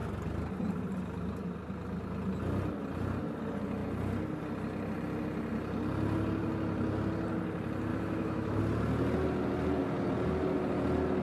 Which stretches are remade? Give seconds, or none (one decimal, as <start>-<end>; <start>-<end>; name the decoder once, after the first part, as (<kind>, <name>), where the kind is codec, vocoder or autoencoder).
7.9-8.6 (autoencoder, DAC-VAE)